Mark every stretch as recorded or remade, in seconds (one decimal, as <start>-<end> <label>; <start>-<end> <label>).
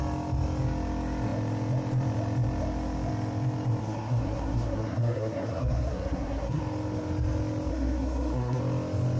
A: 0.0-3.8 recorded; 3.8-6.6 remade; 6.6-7.7 recorded; 7.7-8.6 remade; 8.6-9.2 recorded